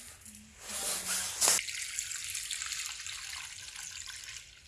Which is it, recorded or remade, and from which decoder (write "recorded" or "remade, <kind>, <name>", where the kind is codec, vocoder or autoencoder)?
recorded